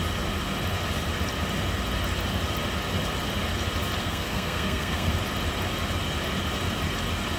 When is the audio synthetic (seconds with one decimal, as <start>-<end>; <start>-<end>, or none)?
4.0-5.1